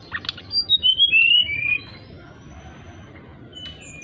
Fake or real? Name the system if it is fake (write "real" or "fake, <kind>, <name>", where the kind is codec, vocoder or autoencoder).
real